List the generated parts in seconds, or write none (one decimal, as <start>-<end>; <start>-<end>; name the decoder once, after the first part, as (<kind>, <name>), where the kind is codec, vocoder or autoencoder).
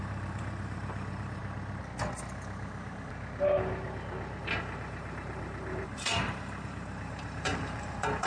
0.0-1.4 (vocoder, BigVGAN v2); 4.4-8.3